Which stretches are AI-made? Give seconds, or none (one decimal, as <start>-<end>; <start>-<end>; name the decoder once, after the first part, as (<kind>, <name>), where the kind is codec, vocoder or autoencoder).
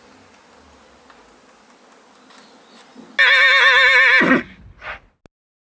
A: none